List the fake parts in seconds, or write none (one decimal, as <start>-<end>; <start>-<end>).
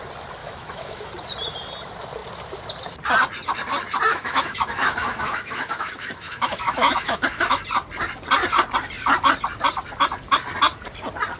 0.4-1.1; 4.1-7.6